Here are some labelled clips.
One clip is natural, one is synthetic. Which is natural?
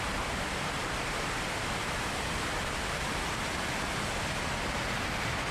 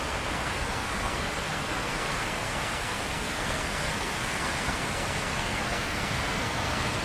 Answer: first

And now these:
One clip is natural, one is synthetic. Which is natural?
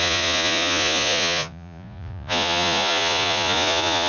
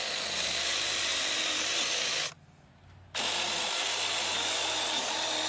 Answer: second